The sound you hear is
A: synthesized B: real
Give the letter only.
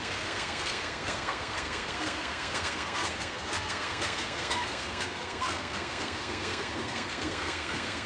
A